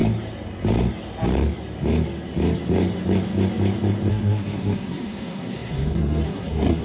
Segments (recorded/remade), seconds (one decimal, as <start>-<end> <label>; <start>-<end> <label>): 0.0-4.1 recorded; 4.1-6.8 remade